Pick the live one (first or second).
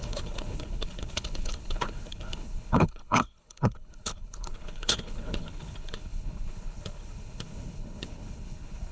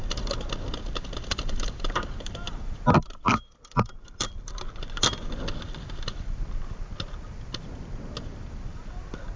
second